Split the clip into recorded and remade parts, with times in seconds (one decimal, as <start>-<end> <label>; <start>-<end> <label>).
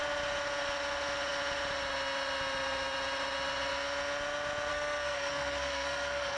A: 0.0-4.7 recorded; 4.7-6.4 remade